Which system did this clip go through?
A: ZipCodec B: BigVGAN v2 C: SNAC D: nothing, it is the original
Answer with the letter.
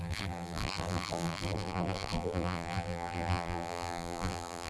B